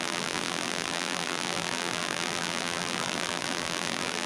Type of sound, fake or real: fake